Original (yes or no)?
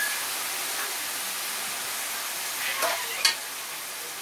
yes